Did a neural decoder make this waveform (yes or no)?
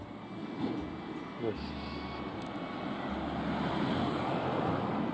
no